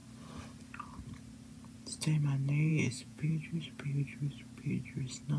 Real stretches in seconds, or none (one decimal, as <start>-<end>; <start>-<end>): 0.0-2.7; 3.3-5.4